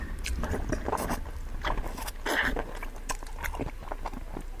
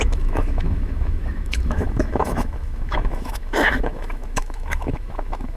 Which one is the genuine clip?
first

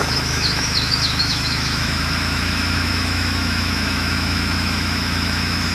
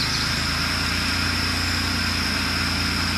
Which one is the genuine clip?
second